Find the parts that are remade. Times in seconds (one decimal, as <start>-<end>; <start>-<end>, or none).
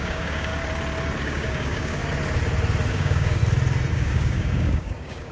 0.0-0.5; 1.2-2.0; 2.9-3.4; 3.9-5.3